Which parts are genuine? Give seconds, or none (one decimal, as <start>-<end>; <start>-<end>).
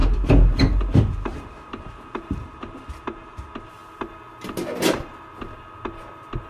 1.9-6.5